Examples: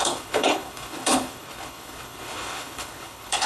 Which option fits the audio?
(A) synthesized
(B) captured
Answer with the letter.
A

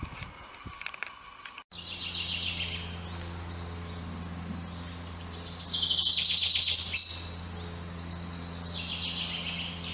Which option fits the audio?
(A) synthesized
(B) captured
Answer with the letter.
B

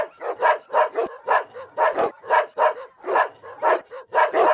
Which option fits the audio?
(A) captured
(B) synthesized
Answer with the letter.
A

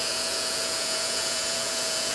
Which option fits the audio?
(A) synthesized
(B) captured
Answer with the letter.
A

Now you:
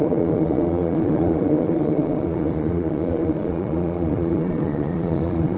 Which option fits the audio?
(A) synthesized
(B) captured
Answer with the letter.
A